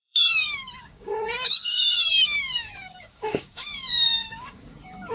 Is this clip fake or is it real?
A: fake